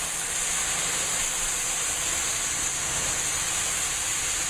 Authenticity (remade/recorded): recorded